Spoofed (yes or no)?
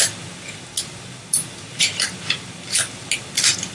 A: no